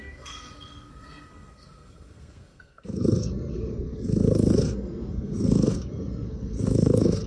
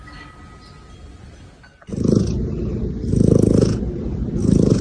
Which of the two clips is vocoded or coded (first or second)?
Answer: first